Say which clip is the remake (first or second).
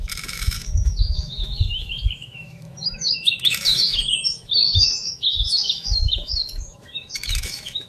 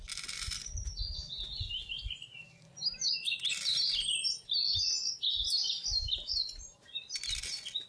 first